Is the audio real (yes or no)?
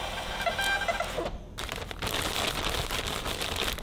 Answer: yes